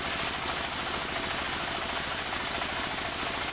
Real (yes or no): yes